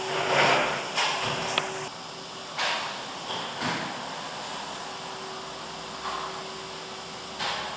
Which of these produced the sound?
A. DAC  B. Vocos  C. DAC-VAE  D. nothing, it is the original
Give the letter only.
D